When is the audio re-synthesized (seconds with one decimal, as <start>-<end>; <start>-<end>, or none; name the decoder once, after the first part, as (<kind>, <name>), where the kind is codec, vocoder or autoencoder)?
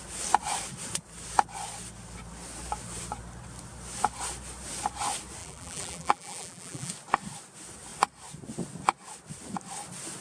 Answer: 5.4-6.9 (vocoder, BigVGAN v2)